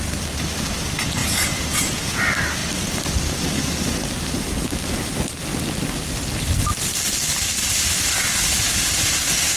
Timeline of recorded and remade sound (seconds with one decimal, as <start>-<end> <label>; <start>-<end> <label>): 0.0-1.2 recorded; 1.2-2.2 remade; 2.2-9.6 recorded